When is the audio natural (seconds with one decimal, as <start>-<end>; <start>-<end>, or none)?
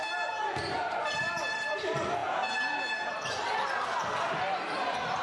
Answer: 0.0-2.2; 3.1-5.2